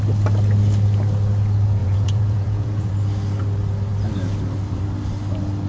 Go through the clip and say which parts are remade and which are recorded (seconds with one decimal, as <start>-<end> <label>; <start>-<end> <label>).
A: 0.0-1.8 recorded; 1.8-2.9 remade; 2.9-5.7 recorded